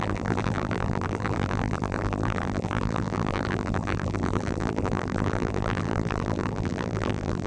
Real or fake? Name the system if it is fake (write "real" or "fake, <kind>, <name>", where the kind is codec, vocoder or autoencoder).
fake, vocoder, BigVGAN v2